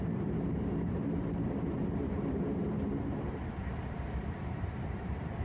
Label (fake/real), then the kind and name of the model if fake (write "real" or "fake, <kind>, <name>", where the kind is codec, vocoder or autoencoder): fake, vocoder, BigVGAN v2